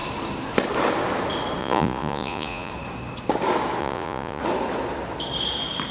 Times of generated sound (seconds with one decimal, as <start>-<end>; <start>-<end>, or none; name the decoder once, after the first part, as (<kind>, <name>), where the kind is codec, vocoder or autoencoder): 1.6-2.7 (vocoder, Vocos); 3.8-4.4